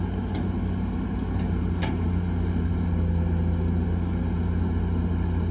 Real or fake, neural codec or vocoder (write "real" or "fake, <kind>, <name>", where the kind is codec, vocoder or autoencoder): real